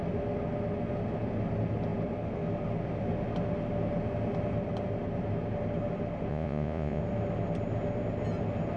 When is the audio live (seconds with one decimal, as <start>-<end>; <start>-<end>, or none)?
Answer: 0.0-6.3; 7.0-8.8